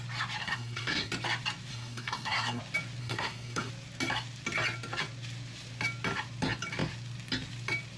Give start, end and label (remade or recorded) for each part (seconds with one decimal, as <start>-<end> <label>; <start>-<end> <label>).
0.0-0.4 recorded; 0.4-1.1 remade; 1.1-1.7 recorded; 1.7-2.6 remade; 2.6-3.0 recorded; 3.0-3.7 remade; 3.7-8.0 recorded